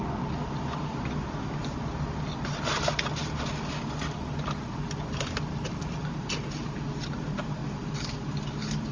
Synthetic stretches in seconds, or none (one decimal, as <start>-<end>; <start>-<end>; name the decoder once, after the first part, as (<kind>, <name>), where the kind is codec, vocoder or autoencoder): none